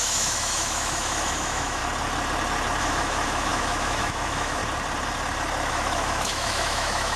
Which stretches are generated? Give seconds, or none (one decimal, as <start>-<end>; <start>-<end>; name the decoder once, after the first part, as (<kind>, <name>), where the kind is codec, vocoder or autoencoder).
0.0-1.8 (autoencoder, DAC-VAE); 2.8-4.6; 5.7-7.2